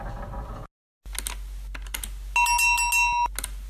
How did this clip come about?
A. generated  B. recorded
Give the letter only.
B